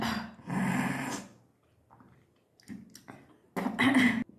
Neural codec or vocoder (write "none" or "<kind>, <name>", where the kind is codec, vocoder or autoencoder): none